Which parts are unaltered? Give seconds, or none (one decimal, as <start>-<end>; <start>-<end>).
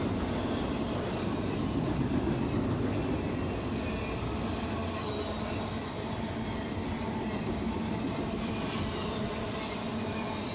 0.0-10.5